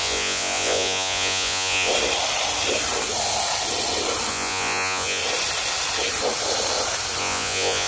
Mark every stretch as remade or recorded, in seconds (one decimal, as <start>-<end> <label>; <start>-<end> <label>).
0.0-1.9 remade; 1.9-4.3 recorded; 4.3-5.2 remade; 5.2-7.2 recorded; 7.2-7.9 remade